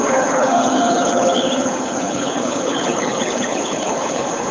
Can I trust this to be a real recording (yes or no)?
no